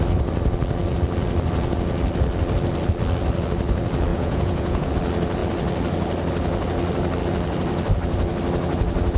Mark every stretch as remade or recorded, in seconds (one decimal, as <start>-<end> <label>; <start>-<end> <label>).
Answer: 0.0-4.1 recorded; 4.1-4.9 remade; 4.9-9.2 recorded